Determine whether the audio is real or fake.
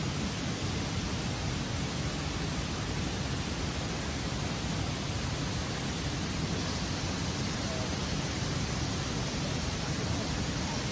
real